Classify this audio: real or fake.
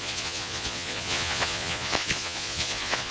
fake